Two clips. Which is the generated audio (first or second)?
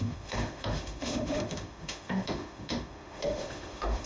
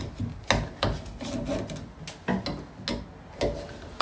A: first